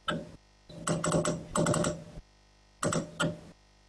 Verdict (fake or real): real